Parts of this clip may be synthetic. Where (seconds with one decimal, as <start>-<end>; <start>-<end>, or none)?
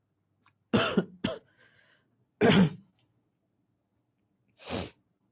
none